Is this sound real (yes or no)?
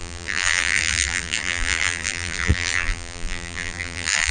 no